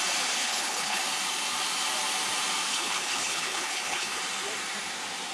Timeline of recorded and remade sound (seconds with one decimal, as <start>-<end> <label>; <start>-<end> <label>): 0.0-0.4 recorded; 0.4-1.0 remade; 1.0-2.7 recorded; 2.7-4.2 remade; 4.2-5.3 recorded